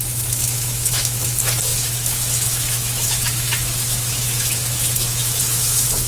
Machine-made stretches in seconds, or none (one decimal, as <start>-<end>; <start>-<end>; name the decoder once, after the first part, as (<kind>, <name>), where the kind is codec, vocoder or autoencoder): 0.0-6.1 (autoencoder, DAC-VAE)